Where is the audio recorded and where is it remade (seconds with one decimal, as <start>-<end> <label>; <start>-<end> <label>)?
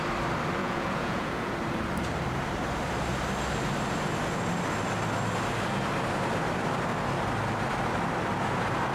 0.0-0.6 recorded; 0.6-1.5 remade; 1.5-8.9 recorded